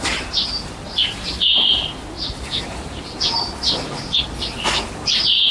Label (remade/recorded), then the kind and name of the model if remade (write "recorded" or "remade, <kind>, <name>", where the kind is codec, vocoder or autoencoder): recorded